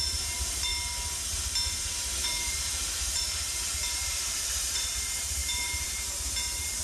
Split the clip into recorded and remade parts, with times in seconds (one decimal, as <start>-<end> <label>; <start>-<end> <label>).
0.0-0.7 remade; 0.7-1.8 recorded; 1.8-6.8 remade